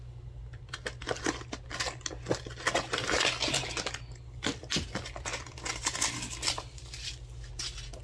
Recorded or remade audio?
recorded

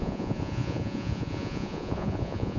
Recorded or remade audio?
remade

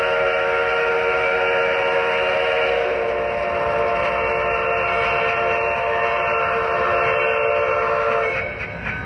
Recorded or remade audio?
recorded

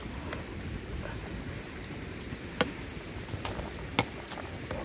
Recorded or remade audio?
recorded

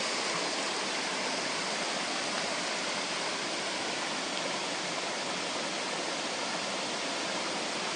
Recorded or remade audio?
recorded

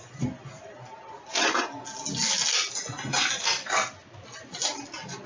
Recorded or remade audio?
recorded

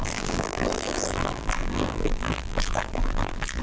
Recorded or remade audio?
remade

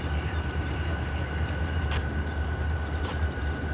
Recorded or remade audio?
remade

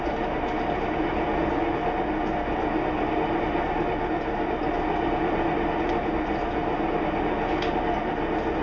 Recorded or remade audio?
recorded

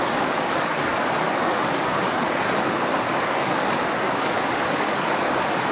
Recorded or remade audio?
remade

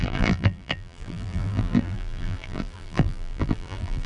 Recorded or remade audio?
remade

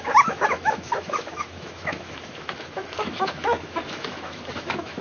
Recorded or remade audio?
remade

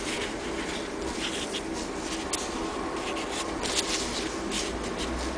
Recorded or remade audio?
recorded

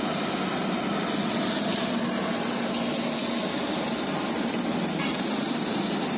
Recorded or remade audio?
recorded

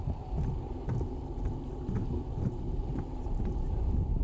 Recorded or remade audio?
recorded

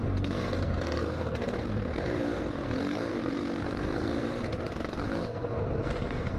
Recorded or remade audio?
remade